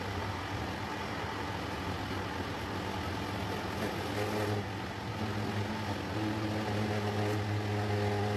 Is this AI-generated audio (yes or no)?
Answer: no